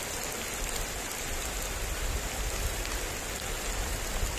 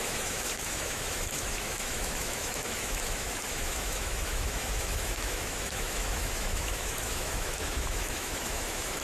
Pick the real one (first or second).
first